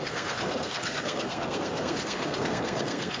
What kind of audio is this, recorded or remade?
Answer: remade